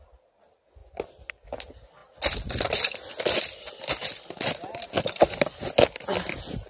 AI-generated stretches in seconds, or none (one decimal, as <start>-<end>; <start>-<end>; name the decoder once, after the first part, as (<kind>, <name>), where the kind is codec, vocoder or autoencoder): none